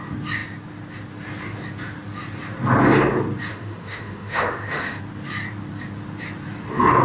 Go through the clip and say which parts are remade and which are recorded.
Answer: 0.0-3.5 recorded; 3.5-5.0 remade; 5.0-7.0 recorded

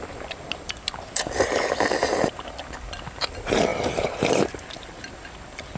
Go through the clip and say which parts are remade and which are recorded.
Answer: 0.0-5.8 recorded

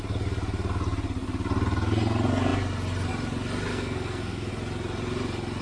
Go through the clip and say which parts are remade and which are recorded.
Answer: 0.0-3.7 recorded; 3.7-4.5 remade; 4.5-5.6 recorded

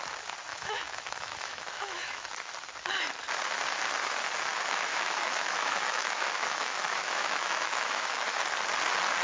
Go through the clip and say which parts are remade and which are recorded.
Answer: 0.0-0.5 recorded; 0.5-2.5 remade; 2.5-4.5 recorded; 4.5-8.4 remade; 8.4-9.2 recorded

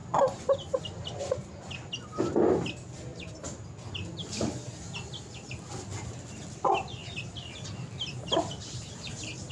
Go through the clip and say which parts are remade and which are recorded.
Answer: 0.0-9.5 recorded

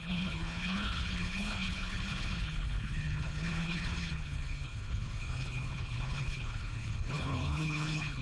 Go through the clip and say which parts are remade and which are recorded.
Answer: 0.0-8.2 remade

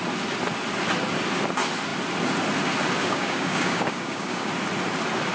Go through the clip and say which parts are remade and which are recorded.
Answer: 0.0-3.0 recorded; 3.0-4.5 remade; 4.5-5.3 recorded